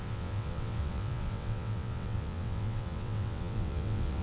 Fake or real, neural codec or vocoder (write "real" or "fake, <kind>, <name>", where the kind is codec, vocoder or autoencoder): fake, vocoder, WaveNeXt